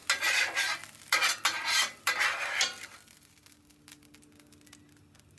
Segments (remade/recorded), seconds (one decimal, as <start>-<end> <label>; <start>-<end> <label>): 0.0-5.4 recorded